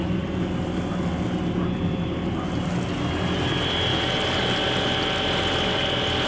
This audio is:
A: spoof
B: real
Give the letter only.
B